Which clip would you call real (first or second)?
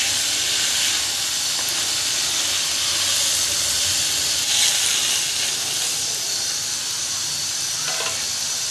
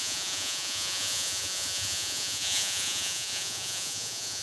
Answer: first